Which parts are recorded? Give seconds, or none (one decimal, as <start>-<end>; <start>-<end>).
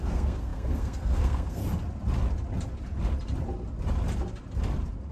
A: 1.6-5.1